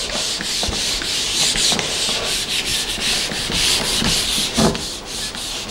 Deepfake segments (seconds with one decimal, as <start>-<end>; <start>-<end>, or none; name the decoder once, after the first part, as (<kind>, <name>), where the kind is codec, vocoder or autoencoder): 0.0-2.7 (vocoder, BigVGAN v2); 3.8-5.7